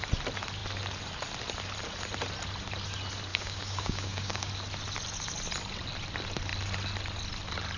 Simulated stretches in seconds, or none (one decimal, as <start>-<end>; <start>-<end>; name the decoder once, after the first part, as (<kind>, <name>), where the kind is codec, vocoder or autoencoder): 3.3-4.5 (codec, DAC)